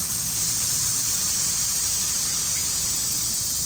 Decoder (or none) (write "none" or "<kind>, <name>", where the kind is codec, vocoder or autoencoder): none